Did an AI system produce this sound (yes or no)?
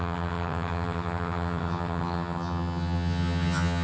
yes